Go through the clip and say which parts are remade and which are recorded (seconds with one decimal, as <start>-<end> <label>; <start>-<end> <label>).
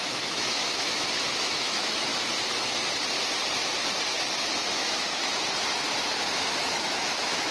0.0-2.1 remade; 2.1-4.6 recorded; 4.6-5.2 remade; 5.2-6.3 recorded; 6.3-7.5 remade